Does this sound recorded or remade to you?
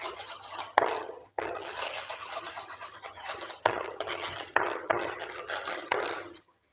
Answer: remade